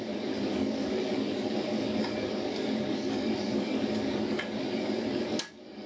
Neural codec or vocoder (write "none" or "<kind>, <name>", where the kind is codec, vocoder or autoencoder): codec, DAC